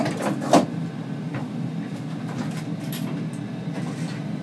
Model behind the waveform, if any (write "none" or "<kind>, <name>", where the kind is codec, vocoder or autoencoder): none